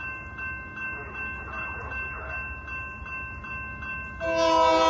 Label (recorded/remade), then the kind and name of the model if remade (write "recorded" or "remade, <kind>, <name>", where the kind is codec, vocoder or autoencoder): recorded